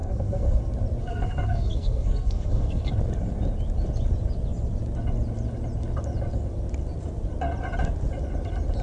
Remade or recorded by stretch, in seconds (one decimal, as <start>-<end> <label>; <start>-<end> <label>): 0.0-0.6 remade; 0.6-1.0 recorded; 1.0-2.9 remade; 2.9-8.8 recorded